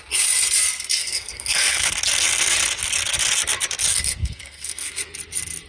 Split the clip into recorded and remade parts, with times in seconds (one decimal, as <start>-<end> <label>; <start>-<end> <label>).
0.0-1.0 recorded; 1.0-1.9 remade; 1.9-4.1 recorded; 4.1-5.0 remade; 5.0-5.7 recorded